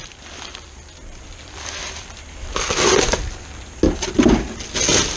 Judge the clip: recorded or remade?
recorded